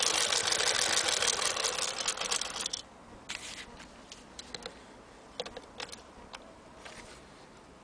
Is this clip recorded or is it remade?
recorded